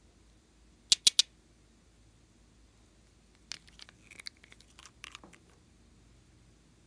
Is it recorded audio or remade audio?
recorded